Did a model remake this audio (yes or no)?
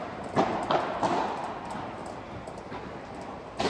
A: no